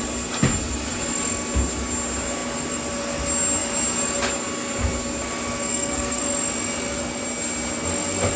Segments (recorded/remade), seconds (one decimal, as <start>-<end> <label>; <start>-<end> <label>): 0.0-5.7 recorded; 5.7-6.2 remade; 6.2-8.4 recorded